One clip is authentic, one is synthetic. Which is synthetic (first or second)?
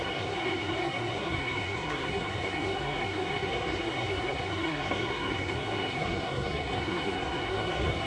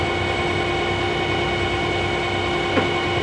first